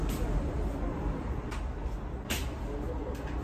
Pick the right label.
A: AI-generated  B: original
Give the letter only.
B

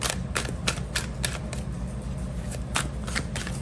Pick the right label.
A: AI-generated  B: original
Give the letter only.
B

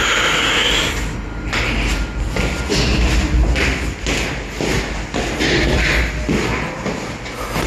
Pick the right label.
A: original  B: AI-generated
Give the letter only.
A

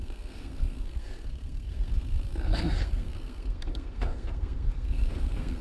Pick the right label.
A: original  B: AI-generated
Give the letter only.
B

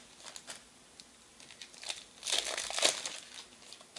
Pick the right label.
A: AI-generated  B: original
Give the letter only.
B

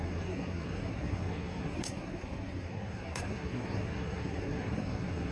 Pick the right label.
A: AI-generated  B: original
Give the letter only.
A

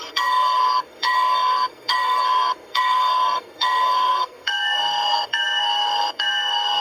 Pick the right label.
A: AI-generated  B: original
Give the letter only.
A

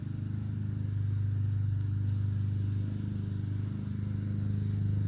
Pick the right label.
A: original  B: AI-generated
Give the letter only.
A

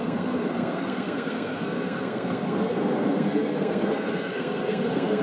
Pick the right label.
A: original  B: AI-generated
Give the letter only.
B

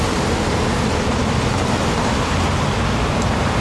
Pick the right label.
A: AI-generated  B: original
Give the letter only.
B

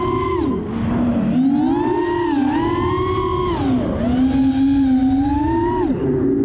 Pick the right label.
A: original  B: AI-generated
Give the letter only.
A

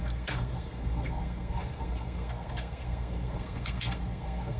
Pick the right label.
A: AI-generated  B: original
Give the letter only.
A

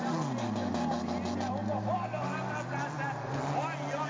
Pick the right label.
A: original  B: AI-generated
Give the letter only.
A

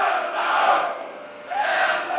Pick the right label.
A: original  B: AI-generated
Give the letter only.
B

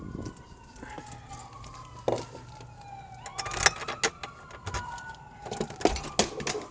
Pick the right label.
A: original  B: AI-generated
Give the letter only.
A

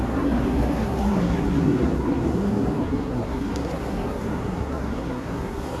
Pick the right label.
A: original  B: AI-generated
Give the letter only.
B